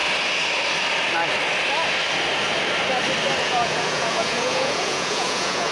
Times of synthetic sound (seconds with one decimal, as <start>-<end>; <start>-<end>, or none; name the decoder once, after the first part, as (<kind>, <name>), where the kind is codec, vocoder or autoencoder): 3.4-5.7 (vocoder, Vocos)